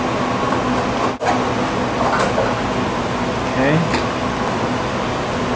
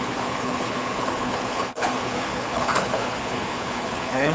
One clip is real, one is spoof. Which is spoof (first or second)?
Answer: second